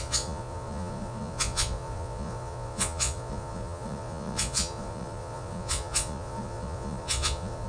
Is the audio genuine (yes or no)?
no